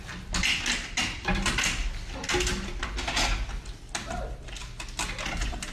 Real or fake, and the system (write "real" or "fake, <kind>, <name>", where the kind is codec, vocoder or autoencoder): real